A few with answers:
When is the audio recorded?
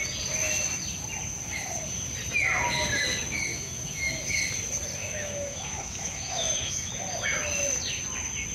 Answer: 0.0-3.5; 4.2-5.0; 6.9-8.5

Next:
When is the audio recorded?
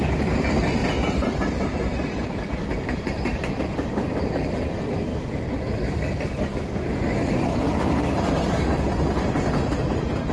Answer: 0.0-0.8; 3.6-10.3